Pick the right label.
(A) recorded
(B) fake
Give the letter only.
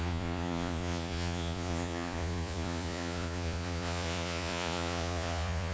B